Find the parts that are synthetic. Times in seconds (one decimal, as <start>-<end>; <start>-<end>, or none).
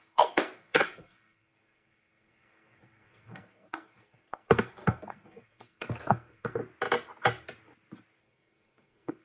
0.0-6.6; 8.2-9.2